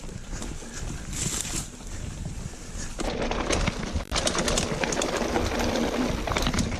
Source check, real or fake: real